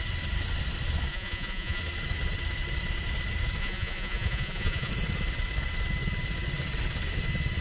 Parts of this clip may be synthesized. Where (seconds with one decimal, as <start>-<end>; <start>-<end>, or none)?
1.1-1.8; 3.6-4.9